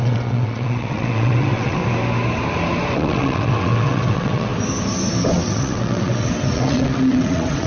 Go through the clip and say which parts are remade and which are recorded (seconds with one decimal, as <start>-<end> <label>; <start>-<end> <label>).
0.0-1.8 remade; 1.8-2.9 recorded; 2.9-4.5 remade; 4.5-5.3 recorded; 5.3-7.7 remade